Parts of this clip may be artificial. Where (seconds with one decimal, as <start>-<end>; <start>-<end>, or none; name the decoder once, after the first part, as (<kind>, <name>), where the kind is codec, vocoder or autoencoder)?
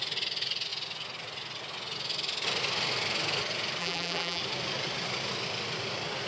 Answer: 3.8-4.4 (vocoder, BigVGAN v2)